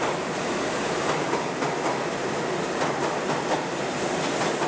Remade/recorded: recorded